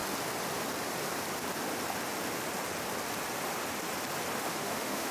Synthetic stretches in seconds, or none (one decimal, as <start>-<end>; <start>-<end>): 4.4-5.1